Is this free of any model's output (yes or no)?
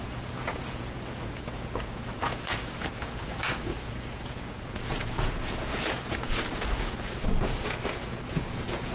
no